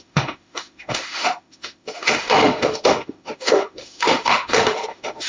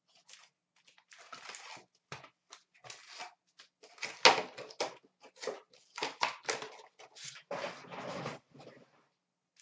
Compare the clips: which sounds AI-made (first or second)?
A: first